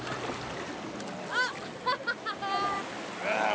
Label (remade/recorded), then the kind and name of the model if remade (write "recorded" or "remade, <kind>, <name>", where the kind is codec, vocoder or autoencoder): recorded